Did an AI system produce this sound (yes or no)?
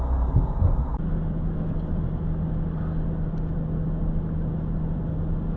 no